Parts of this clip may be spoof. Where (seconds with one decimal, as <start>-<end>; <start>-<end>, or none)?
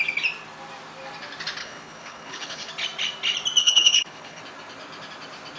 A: 1.6-2.7; 3.6-4.4